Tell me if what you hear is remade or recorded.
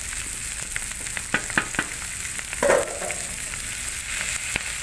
recorded